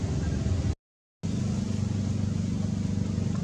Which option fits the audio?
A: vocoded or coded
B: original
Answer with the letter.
B